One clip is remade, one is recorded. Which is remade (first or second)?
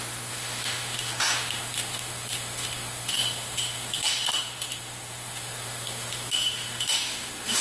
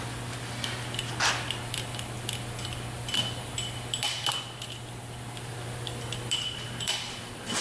first